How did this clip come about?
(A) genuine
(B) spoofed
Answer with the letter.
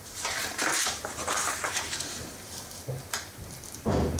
B